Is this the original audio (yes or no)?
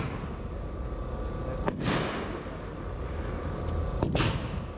yes